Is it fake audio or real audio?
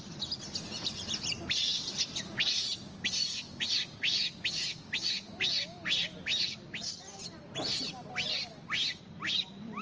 real